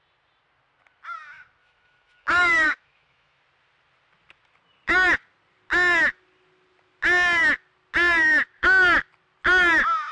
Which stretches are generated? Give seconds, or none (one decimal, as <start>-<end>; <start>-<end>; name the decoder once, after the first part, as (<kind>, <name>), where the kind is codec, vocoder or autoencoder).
1.6-3.4 (autoencoder, DAC-VAE)